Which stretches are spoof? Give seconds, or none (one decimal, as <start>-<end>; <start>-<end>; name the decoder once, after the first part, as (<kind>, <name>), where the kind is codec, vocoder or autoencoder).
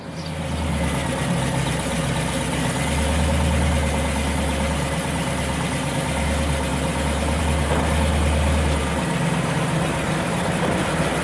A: none